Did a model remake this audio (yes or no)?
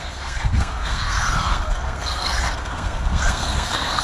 yes